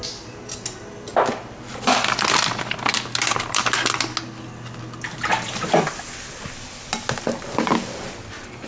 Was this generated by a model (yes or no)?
no